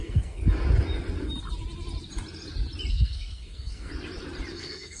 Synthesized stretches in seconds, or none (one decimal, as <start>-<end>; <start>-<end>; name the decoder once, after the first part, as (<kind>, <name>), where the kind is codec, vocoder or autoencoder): 0.0-0.4 (codec, SNAC); 2.9-3.9; 4.5-5.0